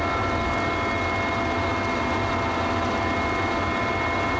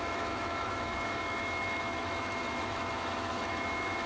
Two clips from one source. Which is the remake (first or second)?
second